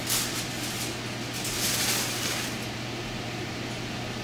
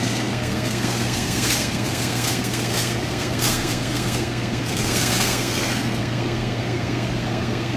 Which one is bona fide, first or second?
first